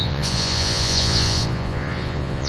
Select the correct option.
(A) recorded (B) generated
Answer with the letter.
B